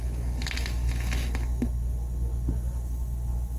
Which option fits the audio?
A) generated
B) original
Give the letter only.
B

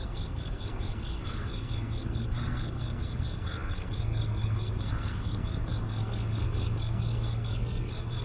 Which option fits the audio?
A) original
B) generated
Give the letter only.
B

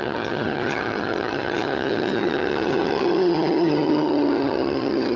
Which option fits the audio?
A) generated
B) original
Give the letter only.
A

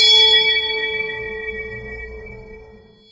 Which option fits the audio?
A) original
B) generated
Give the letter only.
B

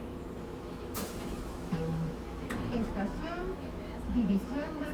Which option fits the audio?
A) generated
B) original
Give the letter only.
A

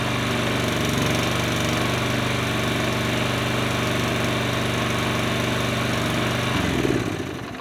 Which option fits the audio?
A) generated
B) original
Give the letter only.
B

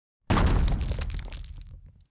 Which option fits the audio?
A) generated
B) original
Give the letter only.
B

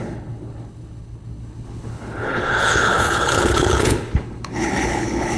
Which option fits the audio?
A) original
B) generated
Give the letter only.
B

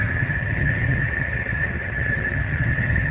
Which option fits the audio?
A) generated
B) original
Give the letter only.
A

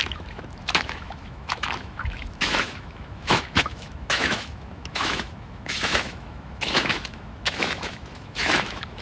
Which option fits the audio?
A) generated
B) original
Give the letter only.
A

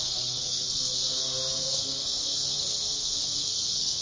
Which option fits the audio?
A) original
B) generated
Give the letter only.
B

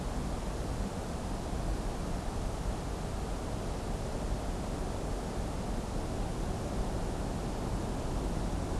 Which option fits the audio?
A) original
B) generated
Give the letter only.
A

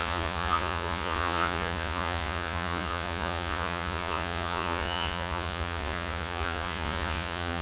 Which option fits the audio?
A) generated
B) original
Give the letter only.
A